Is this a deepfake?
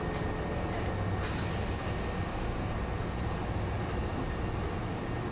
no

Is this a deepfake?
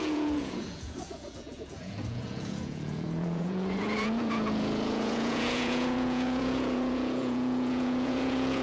yes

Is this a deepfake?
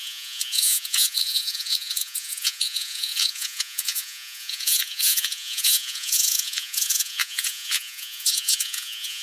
yes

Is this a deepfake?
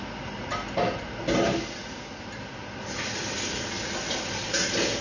no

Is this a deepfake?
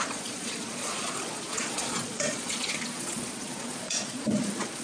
yes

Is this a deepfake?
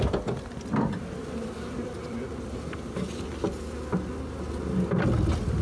no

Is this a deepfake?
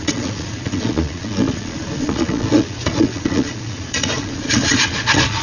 yes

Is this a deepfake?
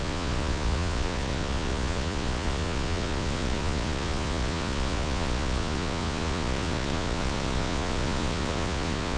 yes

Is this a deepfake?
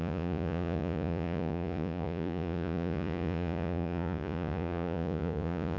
yes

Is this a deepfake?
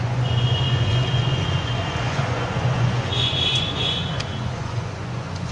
yes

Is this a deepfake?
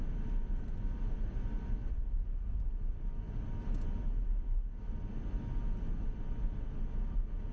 no